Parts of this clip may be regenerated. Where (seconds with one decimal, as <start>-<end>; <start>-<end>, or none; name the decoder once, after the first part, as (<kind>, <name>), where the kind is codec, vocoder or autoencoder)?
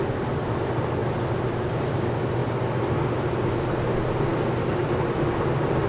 none